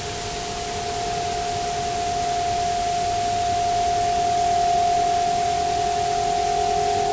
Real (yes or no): yes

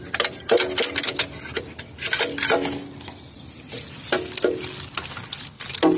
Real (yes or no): yes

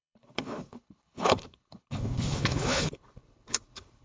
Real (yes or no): no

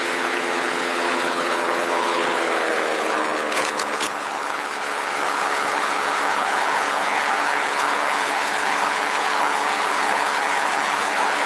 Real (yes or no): no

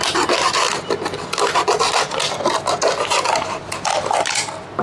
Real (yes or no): yes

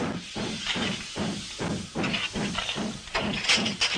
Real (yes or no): yes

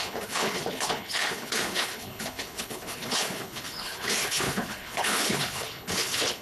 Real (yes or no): no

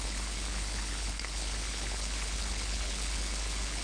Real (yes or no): no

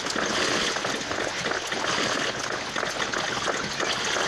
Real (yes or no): yes